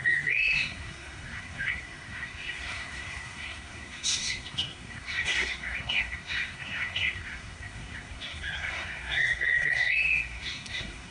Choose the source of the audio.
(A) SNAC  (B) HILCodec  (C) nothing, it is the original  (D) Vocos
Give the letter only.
A